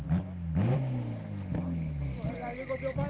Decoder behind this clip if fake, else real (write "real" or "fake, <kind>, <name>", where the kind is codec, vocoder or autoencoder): real